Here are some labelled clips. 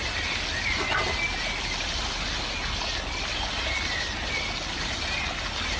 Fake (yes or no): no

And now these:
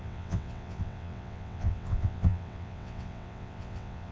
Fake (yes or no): yes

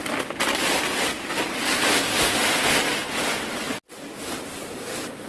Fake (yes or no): no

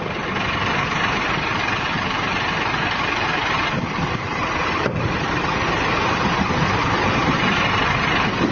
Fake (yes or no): yes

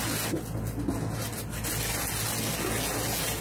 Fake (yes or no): no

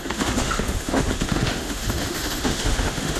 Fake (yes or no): yes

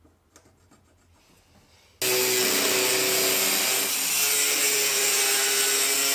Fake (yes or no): no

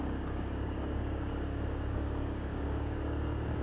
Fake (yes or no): yes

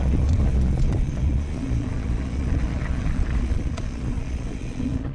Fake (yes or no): yes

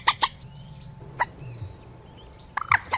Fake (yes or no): no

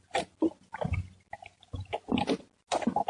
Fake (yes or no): no